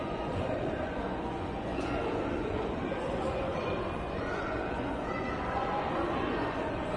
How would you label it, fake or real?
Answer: fake